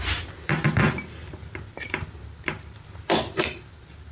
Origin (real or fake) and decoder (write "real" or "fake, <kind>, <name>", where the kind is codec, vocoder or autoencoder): fake, vocoder, BigVGAN v2